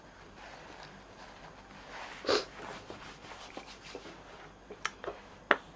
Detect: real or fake real